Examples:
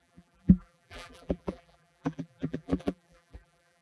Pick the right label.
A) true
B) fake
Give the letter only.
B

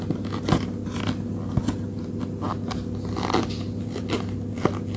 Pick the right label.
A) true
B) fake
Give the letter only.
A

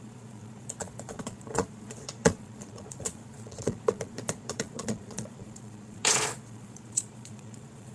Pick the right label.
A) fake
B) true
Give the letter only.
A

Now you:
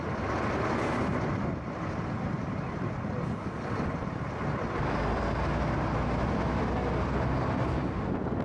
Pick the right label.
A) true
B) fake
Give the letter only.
A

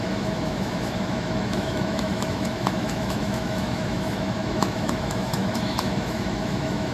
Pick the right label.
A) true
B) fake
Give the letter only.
B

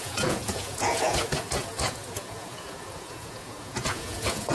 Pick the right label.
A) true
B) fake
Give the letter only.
B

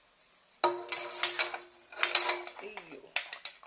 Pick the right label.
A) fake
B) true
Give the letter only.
B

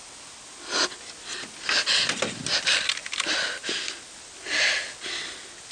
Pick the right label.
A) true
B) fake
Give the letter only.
A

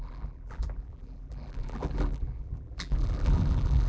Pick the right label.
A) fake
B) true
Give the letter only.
A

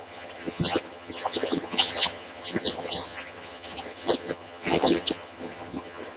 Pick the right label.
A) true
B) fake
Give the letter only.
B